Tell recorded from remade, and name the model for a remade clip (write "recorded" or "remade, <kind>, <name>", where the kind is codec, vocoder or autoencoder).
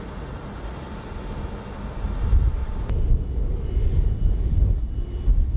recorded